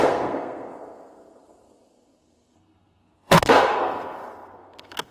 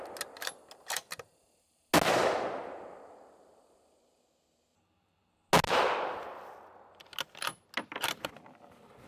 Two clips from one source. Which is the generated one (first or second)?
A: first